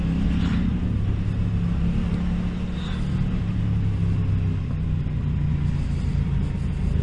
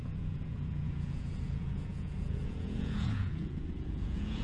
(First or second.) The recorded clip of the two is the first